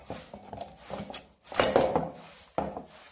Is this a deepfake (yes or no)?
no